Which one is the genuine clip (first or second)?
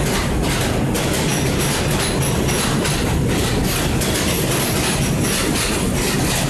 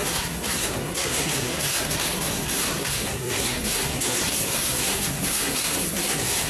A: first